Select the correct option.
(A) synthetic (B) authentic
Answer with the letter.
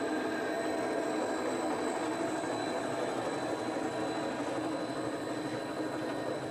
B